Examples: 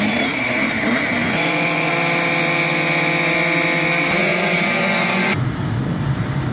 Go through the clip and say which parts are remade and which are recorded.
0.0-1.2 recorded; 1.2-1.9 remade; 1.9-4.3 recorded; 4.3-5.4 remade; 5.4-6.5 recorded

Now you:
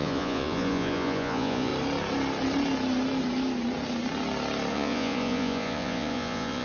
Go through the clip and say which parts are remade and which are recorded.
0.0-1.7 remade; 1.7-4.7 recorded; 4.7-6.6 remade